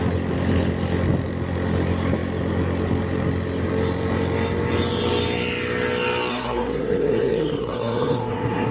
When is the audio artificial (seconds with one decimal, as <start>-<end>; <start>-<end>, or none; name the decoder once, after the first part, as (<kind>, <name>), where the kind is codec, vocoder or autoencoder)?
6.3-8.7 (codec, SNAC)